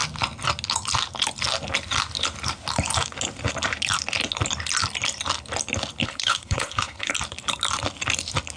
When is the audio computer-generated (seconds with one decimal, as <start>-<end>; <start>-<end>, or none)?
6.0-7.1